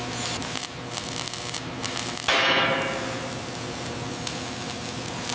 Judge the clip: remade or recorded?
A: recorded